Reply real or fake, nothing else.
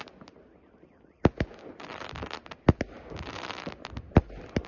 real